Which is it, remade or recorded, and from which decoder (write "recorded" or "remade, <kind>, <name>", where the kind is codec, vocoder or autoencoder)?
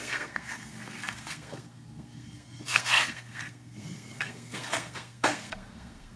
remade, codec, SNAC